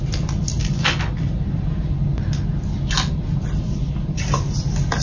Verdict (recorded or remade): recorded